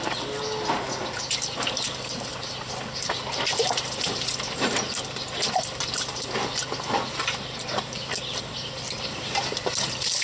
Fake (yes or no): no